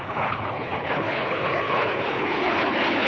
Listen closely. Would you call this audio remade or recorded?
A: remade